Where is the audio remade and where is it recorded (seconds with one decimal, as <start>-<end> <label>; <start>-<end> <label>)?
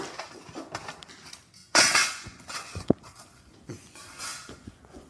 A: 0.0-1.6 recorded; 1.6-5.1 remade